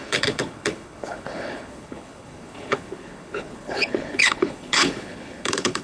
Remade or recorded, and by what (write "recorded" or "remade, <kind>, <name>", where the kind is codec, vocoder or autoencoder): remade, codec, HILCodec